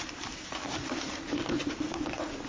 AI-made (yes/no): yes